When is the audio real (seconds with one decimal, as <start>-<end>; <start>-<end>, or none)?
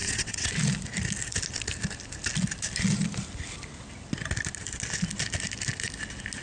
0.5-6.4